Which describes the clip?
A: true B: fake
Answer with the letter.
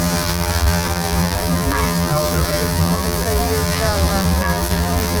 B